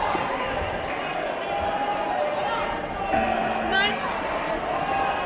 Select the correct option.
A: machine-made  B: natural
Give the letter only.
B